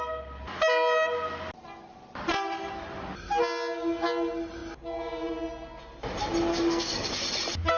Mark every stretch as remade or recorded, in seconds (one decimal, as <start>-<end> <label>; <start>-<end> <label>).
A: 0.0-6.5 recorded; 6.5-7.1 remade; 7.1-7.8 recorded